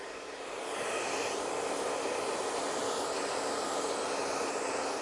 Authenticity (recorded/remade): recorded